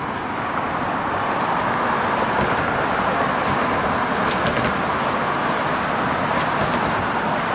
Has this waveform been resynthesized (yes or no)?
no